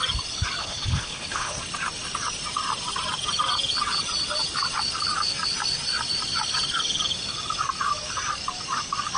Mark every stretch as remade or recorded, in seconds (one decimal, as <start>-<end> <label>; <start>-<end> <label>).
0.0-0.6 recorded; 0.6-1.6 remade; 1.6-9.2 recorded